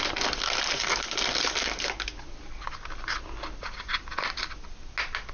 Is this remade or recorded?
recorded